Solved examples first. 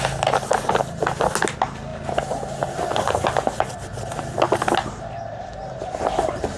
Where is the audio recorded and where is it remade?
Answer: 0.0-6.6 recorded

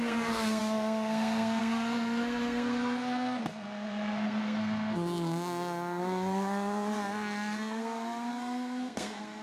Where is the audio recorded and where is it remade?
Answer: 0.0-9.4 remade

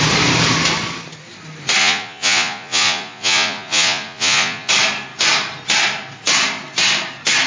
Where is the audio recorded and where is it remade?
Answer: 0.0-1.8 recorded; 1.8-4.7 remade; 4.7-7.5 recorded